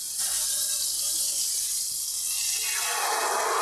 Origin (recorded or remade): recorded